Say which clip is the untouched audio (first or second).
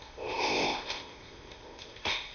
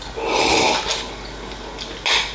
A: second